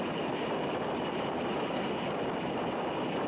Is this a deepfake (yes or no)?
no